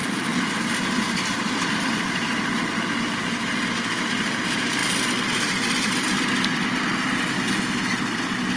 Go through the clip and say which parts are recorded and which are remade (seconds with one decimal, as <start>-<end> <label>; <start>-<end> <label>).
0.0-4.8 recorded; 4.8-7.6 remade; 7.6-8.6 recorded